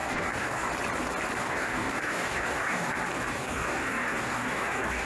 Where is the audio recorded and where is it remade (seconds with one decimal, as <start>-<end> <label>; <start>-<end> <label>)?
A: 0.0-0.7 remade; 0.7-1.4 recorded; 1.4-2.9 remade; 2.9-3.3 recorded; 3.3-5.1 remade